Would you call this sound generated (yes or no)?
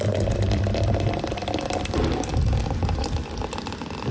no